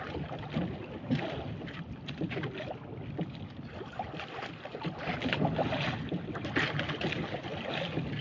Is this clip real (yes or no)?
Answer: yes